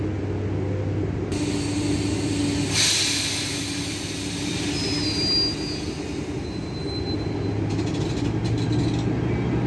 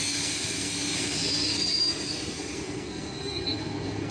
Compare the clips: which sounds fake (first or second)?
second